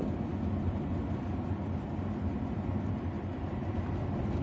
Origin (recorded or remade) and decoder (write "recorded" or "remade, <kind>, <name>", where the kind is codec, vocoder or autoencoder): remade, vocoder, BigVGAN v2